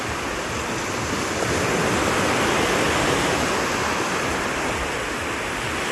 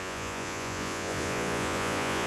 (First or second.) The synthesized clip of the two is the second